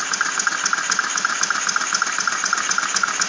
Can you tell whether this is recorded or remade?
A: recorded